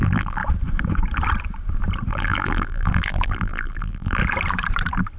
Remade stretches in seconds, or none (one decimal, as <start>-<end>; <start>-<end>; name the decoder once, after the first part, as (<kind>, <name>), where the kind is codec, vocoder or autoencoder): 0.0-0.4 (vocoder, BigVGAN v2); 2.1-4.2